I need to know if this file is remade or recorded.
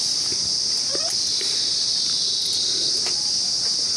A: recorded